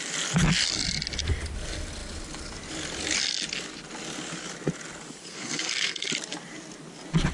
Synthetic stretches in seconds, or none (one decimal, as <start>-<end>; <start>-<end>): 5.2-6.1